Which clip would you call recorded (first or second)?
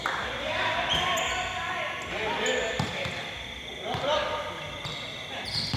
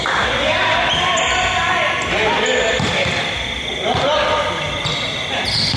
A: first